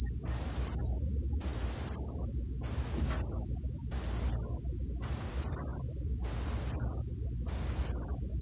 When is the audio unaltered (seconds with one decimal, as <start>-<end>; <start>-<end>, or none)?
0.0-8.4